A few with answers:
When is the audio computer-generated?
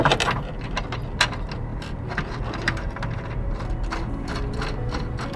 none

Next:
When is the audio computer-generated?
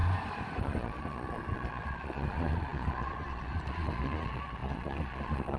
0.6-5.6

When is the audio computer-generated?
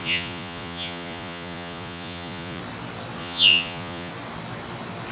0.0-2.6; 3.2-4.1